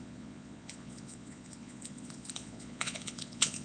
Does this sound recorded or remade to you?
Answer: remade